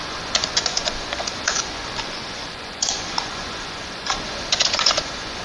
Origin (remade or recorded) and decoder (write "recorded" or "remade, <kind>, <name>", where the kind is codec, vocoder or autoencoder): remade, vocoder, Vocos